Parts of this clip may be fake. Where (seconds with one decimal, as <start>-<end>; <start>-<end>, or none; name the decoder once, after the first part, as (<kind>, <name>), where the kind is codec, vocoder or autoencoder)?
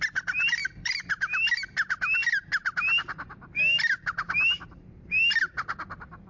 0.6-1.1 (vocoder, BigVGAN v2)